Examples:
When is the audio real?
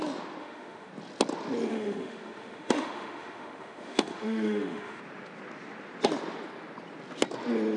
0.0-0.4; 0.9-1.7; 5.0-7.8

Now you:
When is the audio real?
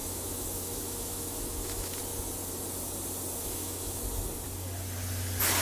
2.0-3.4; 4.0-5.6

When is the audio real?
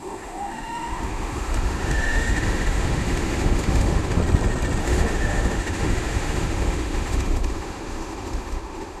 4.2-4.8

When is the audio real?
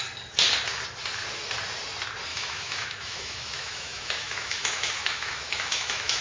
0.0-2.3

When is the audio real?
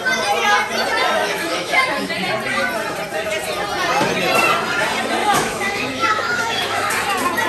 0.0-1.2; 2.1-5.2; 6.9-7.5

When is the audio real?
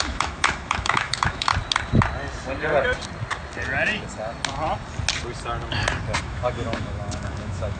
1.5-6.2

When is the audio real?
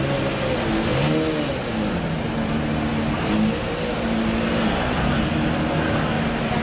0.0-6.6